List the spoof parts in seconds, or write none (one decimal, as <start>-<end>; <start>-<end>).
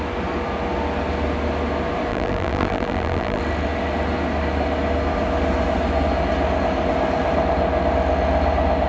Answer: 2.1-3.4